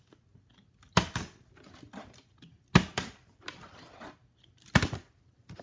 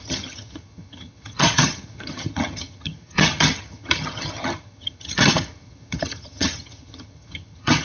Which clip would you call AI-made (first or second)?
second